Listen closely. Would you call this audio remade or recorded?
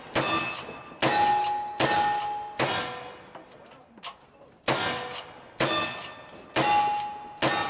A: recorded